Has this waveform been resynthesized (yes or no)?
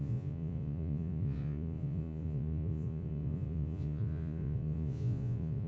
yes